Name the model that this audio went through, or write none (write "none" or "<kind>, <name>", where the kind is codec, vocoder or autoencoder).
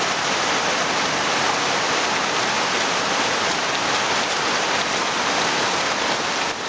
none